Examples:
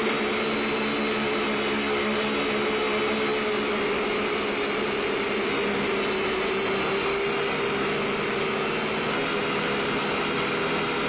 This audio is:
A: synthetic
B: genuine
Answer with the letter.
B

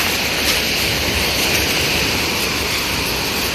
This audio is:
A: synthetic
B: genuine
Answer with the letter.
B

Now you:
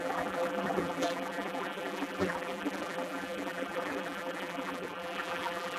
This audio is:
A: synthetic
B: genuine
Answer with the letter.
A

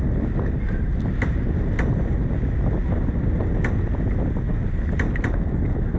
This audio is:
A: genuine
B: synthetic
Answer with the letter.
A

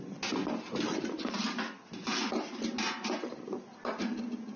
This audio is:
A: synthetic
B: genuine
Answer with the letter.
B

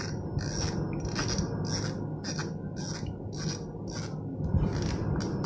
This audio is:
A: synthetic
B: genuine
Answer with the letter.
B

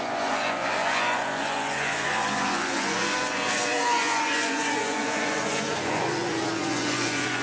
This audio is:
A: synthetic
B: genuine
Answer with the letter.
A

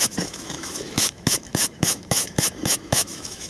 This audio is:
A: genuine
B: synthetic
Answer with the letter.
B